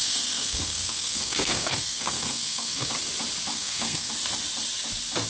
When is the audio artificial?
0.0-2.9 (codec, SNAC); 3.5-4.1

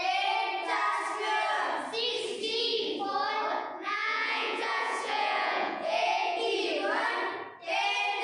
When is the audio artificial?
3.5-6.4 (vocoder, Vocos)

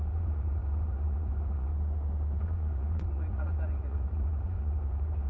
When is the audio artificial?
0.0-1.7 (vocoder, Vocos); 2.4-5.3

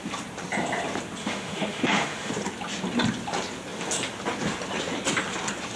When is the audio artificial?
1.2-2.3 (autoencoder, DAC-VAE)

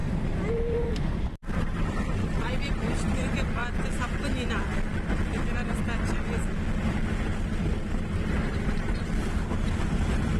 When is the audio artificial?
0.0-3.6 (vocoder, BigVGAN v2); 7.4-10.4